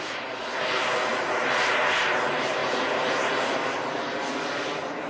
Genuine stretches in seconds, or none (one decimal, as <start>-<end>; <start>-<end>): 0.0-5.1